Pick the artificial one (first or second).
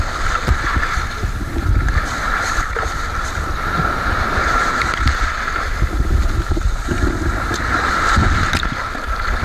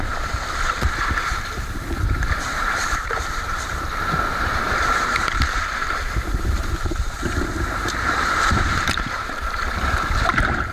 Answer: second